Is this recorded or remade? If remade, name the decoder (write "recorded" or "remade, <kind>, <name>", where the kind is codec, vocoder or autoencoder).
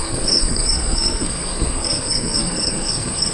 remade, codec, SNAC